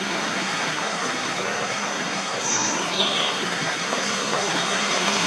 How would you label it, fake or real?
fake